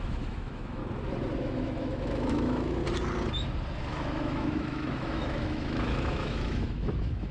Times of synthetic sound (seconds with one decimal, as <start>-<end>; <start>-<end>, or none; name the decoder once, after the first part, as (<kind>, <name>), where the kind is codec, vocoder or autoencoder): 0.0-0.8 (autoencoder, DAC-VAE); 1.4-2.8; 3.8-7.3